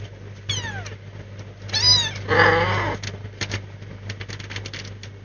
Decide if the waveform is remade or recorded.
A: recorded